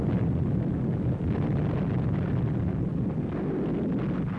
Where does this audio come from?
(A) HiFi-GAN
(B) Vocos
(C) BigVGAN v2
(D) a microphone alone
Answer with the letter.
D